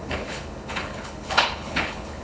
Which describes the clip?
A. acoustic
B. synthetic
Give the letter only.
B